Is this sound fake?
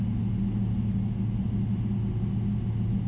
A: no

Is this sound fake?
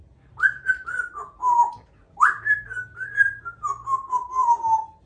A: no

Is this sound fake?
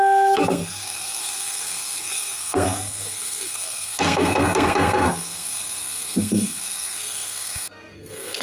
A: yes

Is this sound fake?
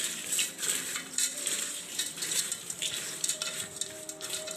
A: yes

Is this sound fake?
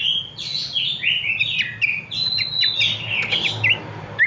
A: no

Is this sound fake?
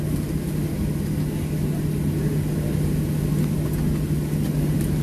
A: no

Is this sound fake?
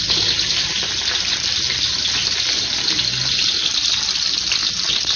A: no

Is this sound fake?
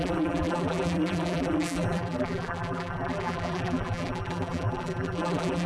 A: yes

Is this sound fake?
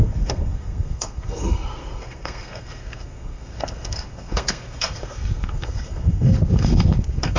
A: yes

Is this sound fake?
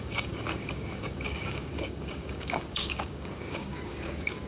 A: yes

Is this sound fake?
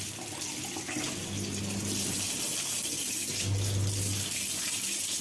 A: no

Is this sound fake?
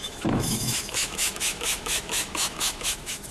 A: yes